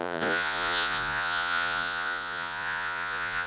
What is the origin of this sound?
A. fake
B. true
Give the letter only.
A